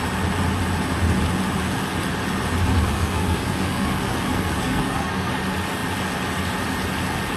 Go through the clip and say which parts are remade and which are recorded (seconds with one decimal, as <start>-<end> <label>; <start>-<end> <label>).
0.0-2.7 recorded; 2.7-5.3 remade; 5.3-7.4 recorded